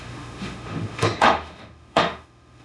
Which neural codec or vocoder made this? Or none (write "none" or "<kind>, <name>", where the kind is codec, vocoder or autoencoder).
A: autoencoder, DAC-VAE